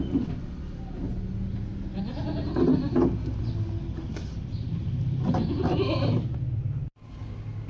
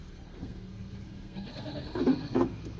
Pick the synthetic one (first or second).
second